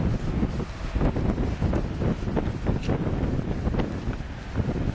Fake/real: real